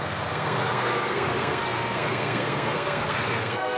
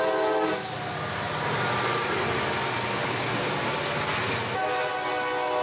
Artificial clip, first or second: first